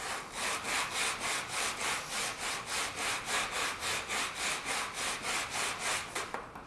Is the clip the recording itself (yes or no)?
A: yes